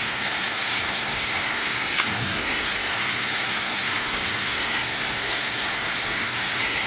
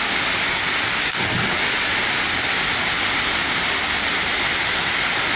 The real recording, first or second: second